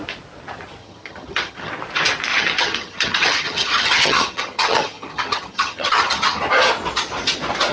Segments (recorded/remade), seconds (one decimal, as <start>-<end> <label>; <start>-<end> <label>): 0.0-0.8 recorded; 0.8-1.7 remade; 1.7-2.3 recorded; 2.3-6.4 remade; 6.4-7.7 recorded